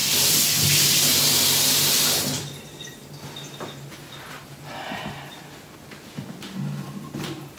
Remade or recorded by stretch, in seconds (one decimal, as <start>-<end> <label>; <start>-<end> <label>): 0.0-7.6 recorded